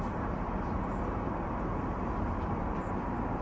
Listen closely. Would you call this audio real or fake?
fake